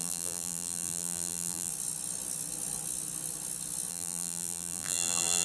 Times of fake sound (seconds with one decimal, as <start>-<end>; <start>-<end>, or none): 0.0-1.7; 3.9-5.4